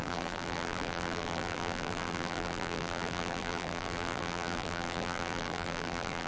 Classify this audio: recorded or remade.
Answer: remade